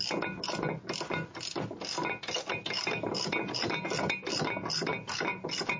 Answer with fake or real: real